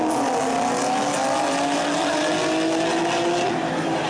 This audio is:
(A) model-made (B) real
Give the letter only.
B